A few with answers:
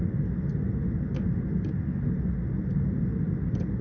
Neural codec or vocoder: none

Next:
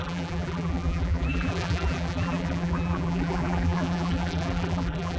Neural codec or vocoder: vocoder, BigVGAN v2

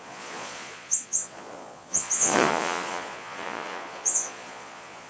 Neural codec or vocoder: vocoder, Vocos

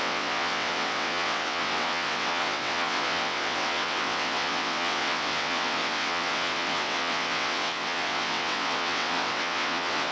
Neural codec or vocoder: vocoder, WaveNeXt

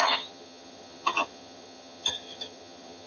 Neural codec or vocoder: vocoder, HiFi-GAN